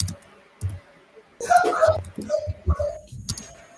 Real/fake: real